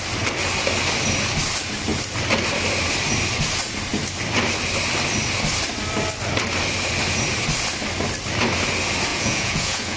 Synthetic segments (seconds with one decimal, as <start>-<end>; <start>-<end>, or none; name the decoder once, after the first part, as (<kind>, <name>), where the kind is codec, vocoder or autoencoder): 9.1-10.0 (vocoder, Vocos)